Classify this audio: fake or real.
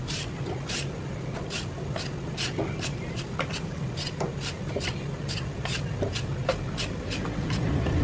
real